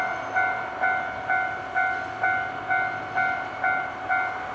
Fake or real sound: real